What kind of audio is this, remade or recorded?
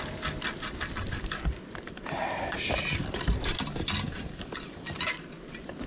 recorded